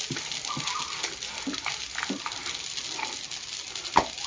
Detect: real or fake real